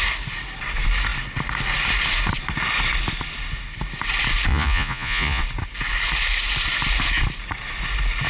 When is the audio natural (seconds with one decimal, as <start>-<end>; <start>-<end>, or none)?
0.0-4.5; 5.4-8.3

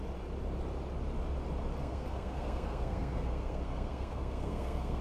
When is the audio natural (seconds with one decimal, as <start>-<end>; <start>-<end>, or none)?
0.0-1.8

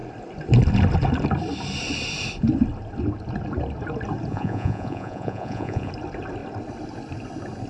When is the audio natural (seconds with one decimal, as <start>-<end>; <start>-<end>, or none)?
0.0-4.3; 5.9-7.7

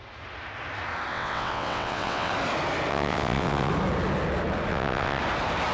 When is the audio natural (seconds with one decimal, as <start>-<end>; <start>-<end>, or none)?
0.0-1.1; 2.3-2.9; 3.7-4.7; 5.2-5.7

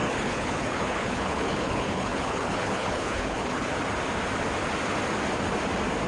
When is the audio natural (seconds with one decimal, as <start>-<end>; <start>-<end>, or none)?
3.7-6.1

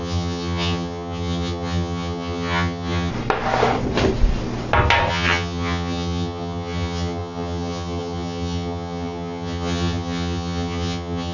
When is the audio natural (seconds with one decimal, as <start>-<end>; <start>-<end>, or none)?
3.1-5.1